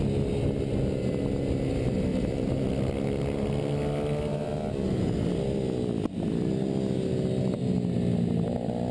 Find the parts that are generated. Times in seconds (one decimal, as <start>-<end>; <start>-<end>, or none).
2.1-2.7